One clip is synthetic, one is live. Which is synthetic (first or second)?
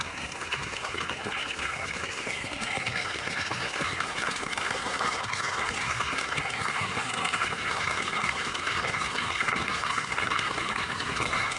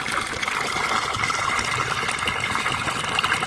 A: first